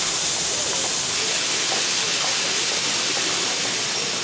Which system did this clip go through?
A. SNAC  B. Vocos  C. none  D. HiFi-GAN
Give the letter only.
C